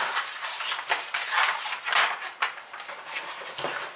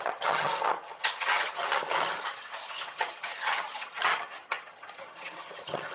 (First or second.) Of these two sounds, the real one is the first